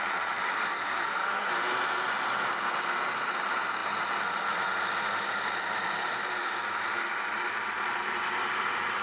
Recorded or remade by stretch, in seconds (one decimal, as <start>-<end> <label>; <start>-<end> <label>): 0.0-0.7 recorded; 0.7-1.5 remade; 1.5-9.0 recorded